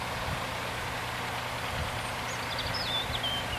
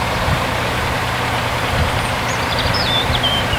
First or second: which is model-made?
second